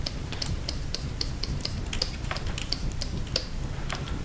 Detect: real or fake fake